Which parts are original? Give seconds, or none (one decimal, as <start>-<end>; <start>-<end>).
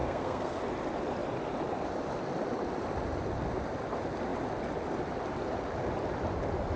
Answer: 0.6-6.8